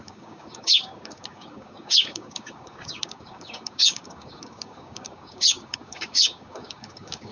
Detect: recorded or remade remade